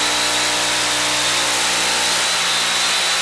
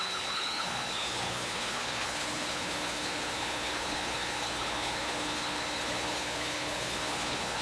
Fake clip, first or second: second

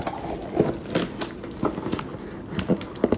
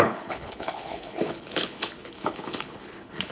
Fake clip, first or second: second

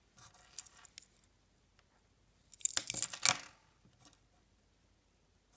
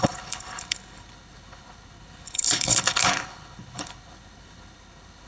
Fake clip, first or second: second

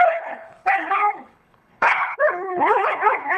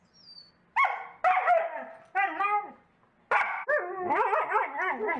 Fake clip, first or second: first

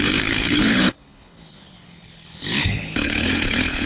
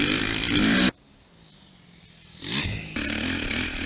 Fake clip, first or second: first